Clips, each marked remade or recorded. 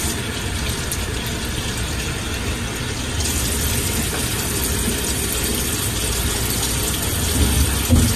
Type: recorded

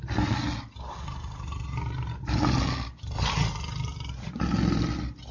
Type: recorded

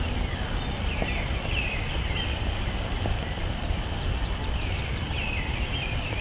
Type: remade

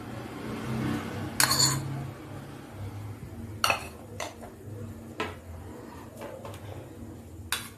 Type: recorded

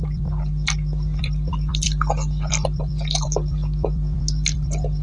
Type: remade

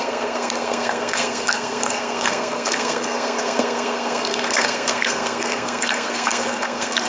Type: remade